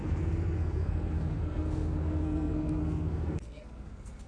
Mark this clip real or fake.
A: fake